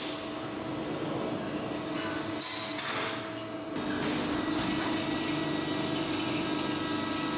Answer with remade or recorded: recorded